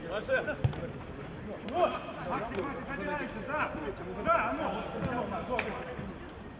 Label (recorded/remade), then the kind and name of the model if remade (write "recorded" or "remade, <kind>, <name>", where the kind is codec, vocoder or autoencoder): recorded